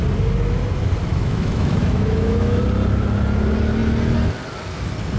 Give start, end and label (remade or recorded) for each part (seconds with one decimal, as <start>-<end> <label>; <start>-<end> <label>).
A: 0.0-1.1 recorded; 1.1-2.6 remade; 2.6-5.2 recorded